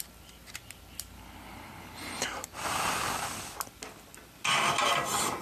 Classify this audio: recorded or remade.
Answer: recorded